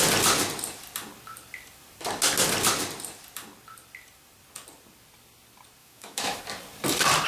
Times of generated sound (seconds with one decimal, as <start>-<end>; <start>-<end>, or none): 5.8-6.4